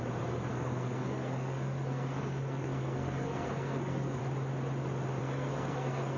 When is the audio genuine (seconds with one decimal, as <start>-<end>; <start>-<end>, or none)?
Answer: 0.0-0.5; 4.2-5.2

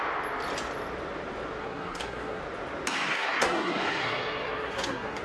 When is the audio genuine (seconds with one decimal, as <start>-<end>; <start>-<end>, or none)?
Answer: 0.0-1.6; 2.4-3.1